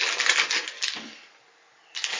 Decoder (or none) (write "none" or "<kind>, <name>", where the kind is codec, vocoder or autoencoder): none